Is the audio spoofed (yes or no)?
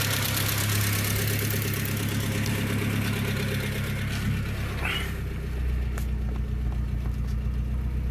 no